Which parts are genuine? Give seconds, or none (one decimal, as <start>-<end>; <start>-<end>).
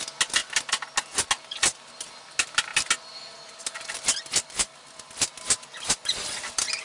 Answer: 0.0-6.8